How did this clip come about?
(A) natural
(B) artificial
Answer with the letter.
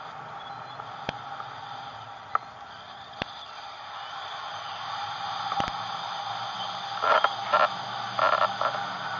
A